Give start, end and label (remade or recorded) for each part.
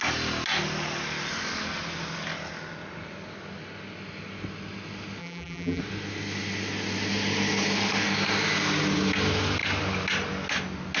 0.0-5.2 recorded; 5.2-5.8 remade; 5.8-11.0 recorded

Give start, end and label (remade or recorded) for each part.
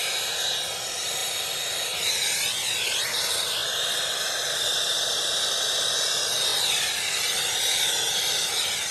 0.0-8.9 recorded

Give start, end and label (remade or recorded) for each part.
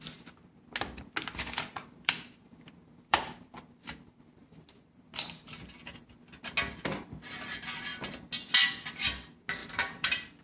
0.0-1.8 recorded; 1.8-5.2 remade; 5.2-9.6 recorded; 9.6-10.4 remade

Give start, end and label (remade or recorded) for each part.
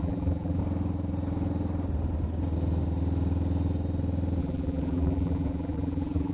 0.0-0.6 remade; 0.6-4.4 recorded; 4.4-6.3 remade